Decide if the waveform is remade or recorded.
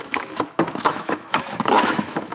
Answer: remade